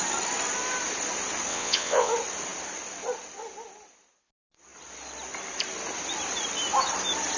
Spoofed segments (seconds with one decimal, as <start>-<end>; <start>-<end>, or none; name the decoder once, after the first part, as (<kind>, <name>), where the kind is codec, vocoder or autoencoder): 1.5-2.1 (vocoder, WaveNeXt)